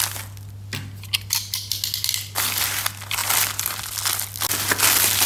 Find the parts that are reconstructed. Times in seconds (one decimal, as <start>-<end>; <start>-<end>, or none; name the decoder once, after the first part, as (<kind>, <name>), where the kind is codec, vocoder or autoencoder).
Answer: none